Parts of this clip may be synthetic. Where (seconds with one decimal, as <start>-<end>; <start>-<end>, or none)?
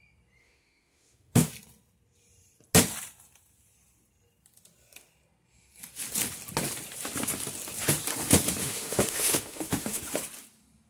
0.4-1.5; 8.6-10.0